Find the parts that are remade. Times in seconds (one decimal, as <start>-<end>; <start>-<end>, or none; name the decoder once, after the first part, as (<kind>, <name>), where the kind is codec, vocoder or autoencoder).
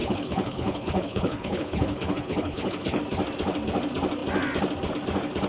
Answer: 0.0-3.0 (codec, HILCodec)